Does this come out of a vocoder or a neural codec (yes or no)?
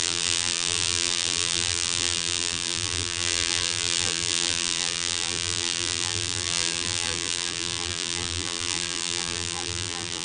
yes